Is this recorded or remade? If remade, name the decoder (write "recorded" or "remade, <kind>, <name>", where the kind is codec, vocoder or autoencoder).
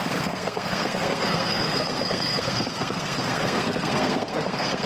remade, codec, SNAC